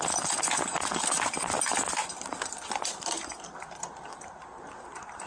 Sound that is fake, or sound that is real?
real